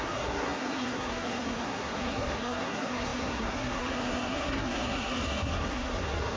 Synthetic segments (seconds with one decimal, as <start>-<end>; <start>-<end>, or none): 0.0-6.4